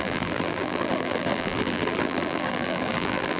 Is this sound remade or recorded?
remade